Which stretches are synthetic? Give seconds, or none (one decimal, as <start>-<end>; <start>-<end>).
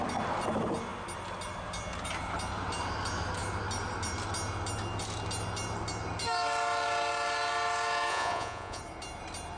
8.1-8.8